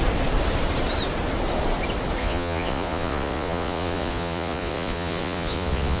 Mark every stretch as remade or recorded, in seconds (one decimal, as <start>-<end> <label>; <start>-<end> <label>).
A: 0.0-2.2 recorded; 2.2-6.0 remade